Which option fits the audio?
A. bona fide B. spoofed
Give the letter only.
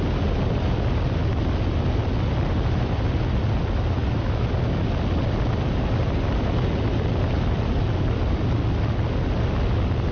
A